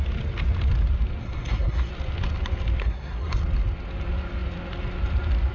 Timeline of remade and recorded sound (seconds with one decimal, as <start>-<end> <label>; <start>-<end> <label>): 0.0-1.2 recorded; 1.2-1.9 remade; 1.9-2.8 recorded; 2.8-3.4 remade; 3.4-5.5 recorded

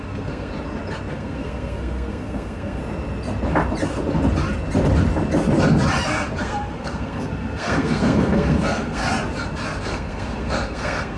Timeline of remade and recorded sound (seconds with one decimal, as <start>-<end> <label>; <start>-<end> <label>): 0.0-0.5 remade; 0.5-1.1 recorded; 1.1-2.8 remade; 2.8-6.4 recorded; 6.4-9.0 remade; 9.0-9.8 recorded; 9.8-11.2 remade

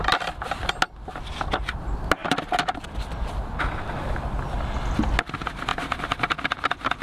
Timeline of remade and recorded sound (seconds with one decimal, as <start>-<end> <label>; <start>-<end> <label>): 0.0-2.2 recorded; 2.2-3.4 remade; 3.4-7.0 recorded

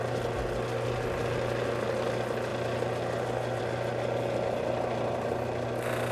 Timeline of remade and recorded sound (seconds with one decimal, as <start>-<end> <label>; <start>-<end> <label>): 0.0-6.1 recorded

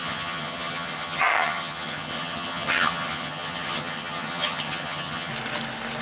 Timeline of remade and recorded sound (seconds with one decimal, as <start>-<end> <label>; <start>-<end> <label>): 0.0-5.3 remade; 5.3-6.0 recorded

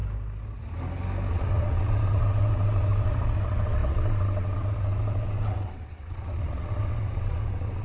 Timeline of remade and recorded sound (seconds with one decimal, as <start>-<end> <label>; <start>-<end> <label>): 0.0-1.3 recorded; 1.3-7.8 remade